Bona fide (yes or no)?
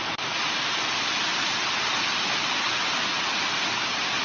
yes